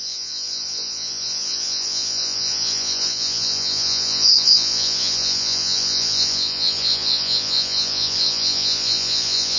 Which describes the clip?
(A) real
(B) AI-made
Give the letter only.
B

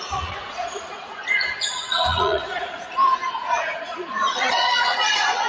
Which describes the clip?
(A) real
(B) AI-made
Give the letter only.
B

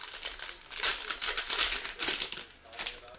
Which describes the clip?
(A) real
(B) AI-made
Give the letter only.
A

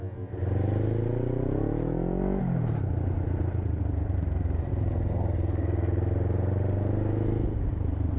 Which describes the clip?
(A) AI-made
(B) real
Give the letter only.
B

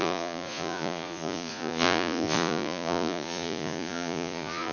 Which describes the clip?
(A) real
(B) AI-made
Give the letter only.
B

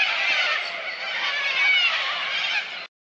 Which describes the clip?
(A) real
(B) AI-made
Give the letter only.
A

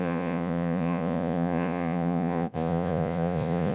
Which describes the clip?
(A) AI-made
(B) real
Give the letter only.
A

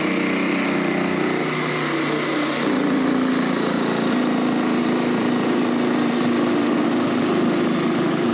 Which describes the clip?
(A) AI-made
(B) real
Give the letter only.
B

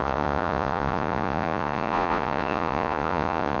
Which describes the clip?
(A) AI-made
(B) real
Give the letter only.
A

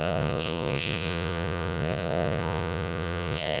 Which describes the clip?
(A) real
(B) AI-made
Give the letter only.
B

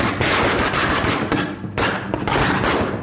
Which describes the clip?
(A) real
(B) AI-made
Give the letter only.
A